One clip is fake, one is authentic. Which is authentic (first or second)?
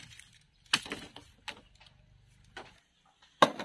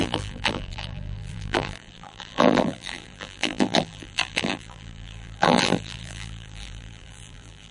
first